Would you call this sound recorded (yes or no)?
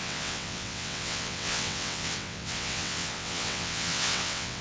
no